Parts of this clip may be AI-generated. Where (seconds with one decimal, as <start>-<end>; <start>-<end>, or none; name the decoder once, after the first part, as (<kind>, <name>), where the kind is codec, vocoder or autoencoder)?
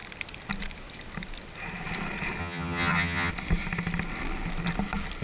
2.4-3.3 (vocoder, HiFi-GAN)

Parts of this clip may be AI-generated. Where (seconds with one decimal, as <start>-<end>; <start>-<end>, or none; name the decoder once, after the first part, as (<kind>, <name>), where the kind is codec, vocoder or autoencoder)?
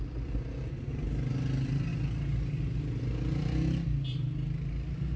none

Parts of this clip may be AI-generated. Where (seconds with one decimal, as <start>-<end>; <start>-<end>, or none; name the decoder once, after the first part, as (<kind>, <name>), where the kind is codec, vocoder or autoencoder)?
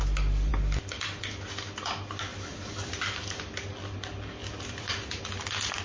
2.3-2.9 (vocoder, BigVGAN v2); 4.4-5.0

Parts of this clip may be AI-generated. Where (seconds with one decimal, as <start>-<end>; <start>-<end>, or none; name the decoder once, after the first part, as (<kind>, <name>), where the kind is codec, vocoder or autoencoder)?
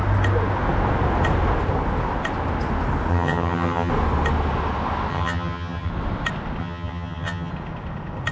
3.1-3.9 (vocoder, HiFi-GAN); 5.1-5.9; 6.6-7.5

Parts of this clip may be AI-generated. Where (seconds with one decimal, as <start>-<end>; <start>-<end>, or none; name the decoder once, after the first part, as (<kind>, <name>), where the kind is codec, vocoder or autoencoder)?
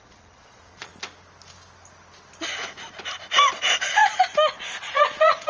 0.0-0.9 (vocoder, Vocos); 3.6-4.0; 4.6-5.5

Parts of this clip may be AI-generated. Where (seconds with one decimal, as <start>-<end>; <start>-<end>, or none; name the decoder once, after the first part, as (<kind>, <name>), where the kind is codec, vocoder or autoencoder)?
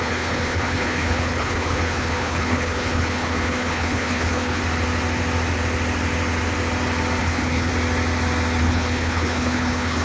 0.0-4.6 (codec, HILCodec); 7.2-7.7; 8.6-10.0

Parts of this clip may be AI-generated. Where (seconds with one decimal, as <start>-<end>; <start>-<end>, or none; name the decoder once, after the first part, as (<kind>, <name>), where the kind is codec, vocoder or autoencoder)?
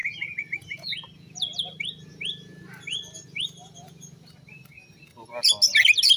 none